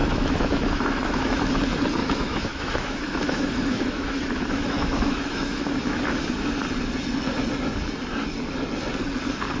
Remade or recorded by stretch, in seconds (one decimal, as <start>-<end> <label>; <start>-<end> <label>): 0.0-1.5 remade; 1.5-2.0 recorded; 2.0-6.5 remade; 6.5-9.6 recorded